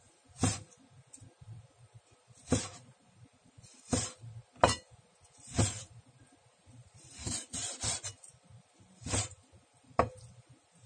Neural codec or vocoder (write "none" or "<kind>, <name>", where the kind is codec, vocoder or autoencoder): none